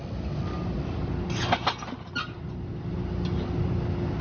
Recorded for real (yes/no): yes